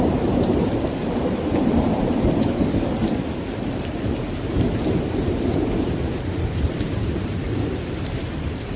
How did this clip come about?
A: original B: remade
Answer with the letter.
B